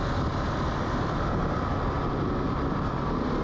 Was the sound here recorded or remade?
recorded